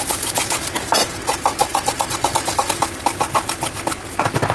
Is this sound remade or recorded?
recorded